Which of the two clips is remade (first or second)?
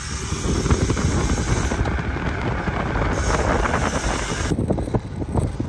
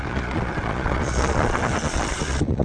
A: second